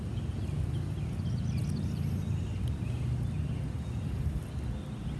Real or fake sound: real